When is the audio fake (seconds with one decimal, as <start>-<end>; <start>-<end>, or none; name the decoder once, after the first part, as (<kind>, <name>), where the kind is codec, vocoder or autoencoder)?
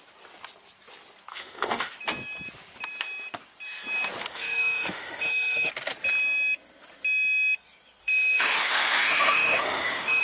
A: 1.3-1.9 (autoencoder, DAC-VAE); 4.3-5.7; 8.0-10.2